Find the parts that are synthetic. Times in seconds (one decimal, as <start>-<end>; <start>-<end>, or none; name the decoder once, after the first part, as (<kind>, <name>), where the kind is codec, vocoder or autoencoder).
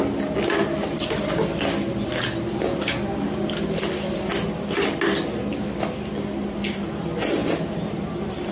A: none